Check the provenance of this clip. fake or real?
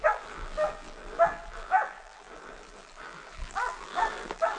fake